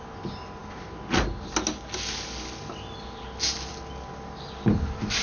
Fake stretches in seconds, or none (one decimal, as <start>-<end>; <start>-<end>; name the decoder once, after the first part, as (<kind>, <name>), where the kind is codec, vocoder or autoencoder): none